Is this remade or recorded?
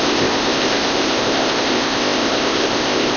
remade